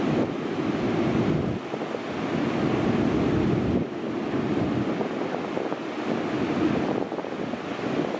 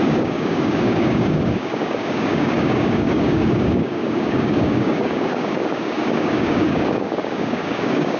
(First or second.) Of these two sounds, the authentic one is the first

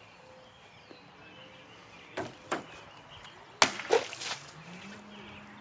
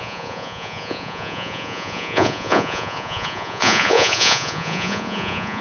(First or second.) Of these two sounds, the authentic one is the first